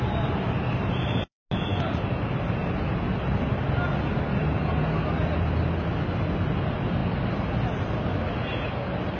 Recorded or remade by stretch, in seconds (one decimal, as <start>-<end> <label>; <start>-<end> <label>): 0.0-9.2 recorded